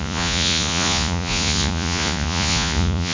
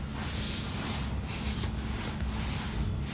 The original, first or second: second